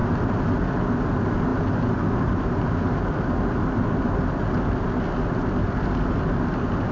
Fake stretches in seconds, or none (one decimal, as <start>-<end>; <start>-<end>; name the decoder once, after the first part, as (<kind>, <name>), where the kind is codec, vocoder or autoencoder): none